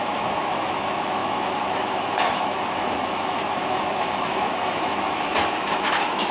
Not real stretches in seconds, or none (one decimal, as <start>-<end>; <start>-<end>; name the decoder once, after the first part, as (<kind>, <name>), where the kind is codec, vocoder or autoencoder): 0.0-6.3 (autoencoder, DAC-VAE)